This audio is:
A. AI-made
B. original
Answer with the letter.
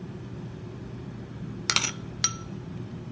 B